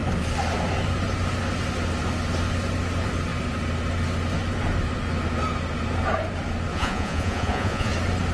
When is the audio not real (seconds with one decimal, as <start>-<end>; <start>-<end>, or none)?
6.7-7.9